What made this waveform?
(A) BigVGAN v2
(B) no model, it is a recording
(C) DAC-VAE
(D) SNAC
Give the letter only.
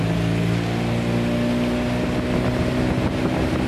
B